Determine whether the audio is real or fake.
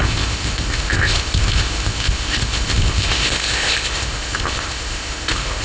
fake